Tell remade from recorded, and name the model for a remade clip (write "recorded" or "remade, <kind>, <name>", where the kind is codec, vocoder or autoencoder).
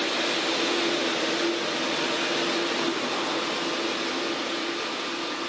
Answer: recorded